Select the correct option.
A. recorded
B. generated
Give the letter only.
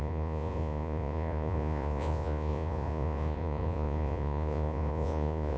B